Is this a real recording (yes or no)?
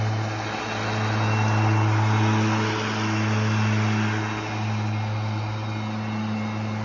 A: yes